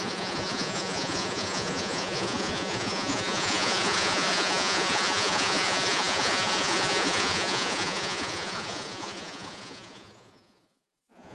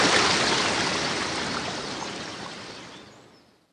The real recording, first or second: second